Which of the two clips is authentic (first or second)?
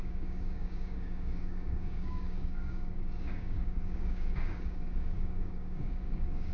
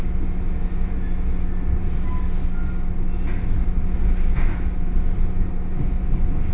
second